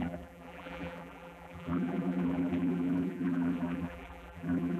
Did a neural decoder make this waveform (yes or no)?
yes